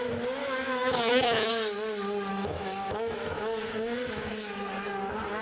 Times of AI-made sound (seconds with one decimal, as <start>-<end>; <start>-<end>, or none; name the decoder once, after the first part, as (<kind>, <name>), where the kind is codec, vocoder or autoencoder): 0.4-1.5 (autoencoder, DAC-VAE); 2.3-4.7